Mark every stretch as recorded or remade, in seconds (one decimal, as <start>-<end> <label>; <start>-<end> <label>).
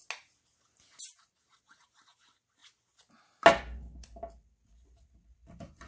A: 0.0-5.4 recorded; 5.4-5.9 remade